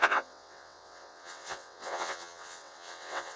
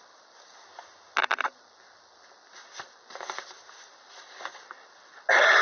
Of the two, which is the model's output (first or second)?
first